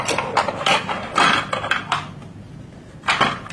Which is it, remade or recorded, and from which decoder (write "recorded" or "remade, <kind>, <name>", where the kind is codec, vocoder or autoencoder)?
recorded